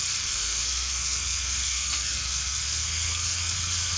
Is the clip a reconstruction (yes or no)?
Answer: yes